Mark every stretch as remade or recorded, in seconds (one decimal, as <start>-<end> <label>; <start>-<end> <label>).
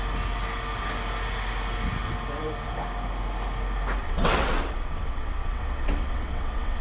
0.0-4.0 recorded; 4.0-6.8 remade